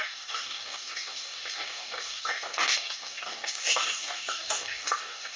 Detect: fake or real fake